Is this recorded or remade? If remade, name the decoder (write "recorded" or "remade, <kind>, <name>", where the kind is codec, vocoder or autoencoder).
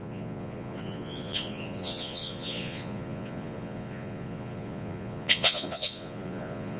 remade, vocoder, Vocos